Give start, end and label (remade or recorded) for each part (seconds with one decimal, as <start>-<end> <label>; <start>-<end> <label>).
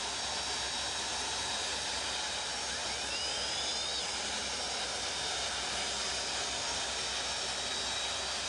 0.0-8.5 recorded